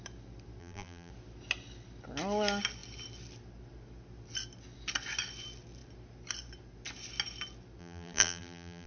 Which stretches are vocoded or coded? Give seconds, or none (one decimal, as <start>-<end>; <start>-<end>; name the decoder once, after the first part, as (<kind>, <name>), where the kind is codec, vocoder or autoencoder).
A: 0.6-1.1 (vocoder, BigVGAN v2); 7.8-8.9